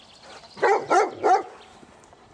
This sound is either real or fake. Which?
real